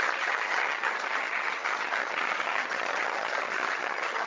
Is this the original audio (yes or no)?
no